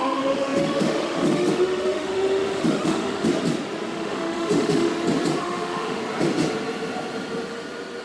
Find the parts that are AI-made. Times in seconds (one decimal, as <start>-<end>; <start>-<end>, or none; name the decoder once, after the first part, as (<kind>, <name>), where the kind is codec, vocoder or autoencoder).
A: 0.0-3.3 (autoencoder, DAC-VAE); 3.9-4.9; 5.4-6.0